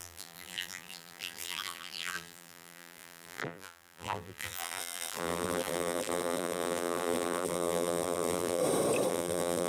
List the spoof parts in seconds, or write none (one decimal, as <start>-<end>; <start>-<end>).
0.0-8.6; 9.1-9.7